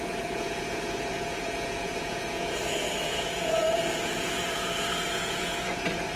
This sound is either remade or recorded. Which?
remade